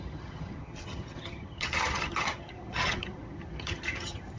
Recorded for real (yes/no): no